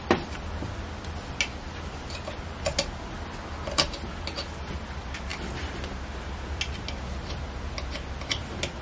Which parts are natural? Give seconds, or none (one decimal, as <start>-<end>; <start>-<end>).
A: 0.0-8.8